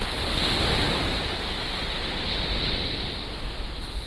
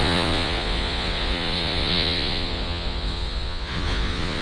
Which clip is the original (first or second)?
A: first